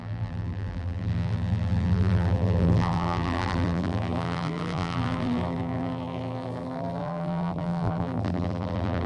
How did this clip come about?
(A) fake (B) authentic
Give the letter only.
A